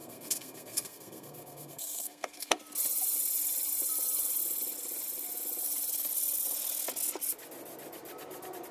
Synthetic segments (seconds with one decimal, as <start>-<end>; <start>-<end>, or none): 0.0-2.6